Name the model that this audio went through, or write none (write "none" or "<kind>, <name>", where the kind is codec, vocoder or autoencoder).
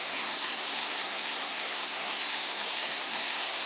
codec, SNAC